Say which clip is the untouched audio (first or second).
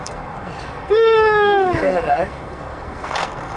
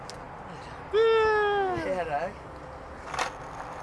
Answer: second